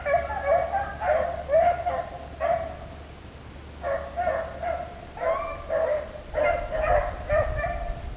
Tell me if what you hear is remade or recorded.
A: recorded